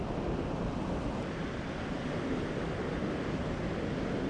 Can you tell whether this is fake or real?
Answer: real